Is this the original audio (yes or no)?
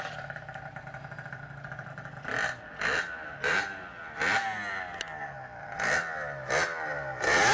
yes